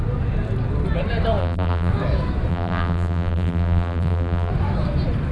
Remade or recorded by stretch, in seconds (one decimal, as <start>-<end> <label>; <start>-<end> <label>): 0.0-1.4 recorded; 1.4-1.9 remade; 1.9-2.5 recorded; 2.5-4.5 remade; 4.5-5.3 recorded

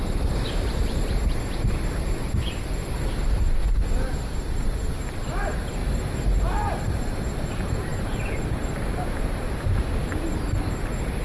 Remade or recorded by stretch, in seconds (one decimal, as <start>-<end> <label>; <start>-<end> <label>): 0.0-3.6 remade; 3.6-4.3 recorded; 4.3-5.8 remade; 5.8-6.3 recorded; 6.3-11.2 remade